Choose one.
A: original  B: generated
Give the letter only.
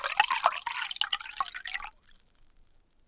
A